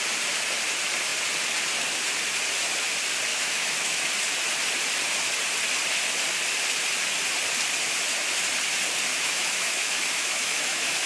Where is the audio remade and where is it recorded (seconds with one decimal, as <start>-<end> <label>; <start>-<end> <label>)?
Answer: 0.0-3.3 recorded; 3.3-4.0 remade; 4.0-9.1 recorded; 9.1-11.1 remade